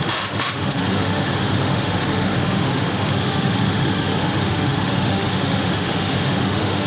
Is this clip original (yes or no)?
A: no